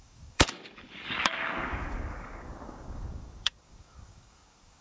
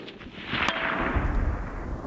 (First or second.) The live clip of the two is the second